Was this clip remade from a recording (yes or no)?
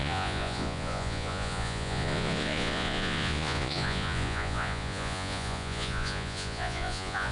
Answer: yes